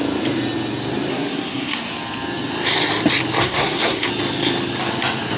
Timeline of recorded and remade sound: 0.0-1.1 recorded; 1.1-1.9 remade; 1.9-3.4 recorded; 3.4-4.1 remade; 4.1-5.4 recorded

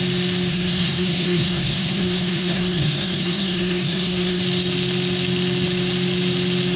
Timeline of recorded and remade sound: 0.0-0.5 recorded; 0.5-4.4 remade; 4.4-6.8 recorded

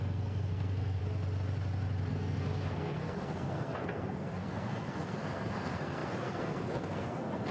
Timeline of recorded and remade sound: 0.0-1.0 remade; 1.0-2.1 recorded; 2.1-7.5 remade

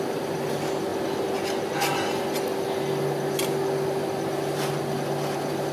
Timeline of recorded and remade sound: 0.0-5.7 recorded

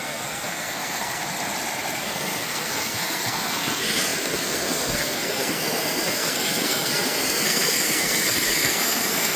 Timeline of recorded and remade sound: 0.0-1.2 remade; 1.2-2.0 recorded; 2.0-9.4 remade